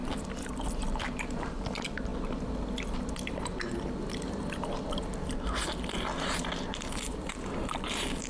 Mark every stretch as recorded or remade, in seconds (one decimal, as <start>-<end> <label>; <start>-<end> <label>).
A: 0.0-2.1 remade; 2.1-7.0 recorded; 7.0-8.3 remade